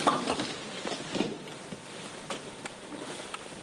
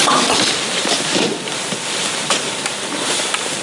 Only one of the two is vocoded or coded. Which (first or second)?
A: second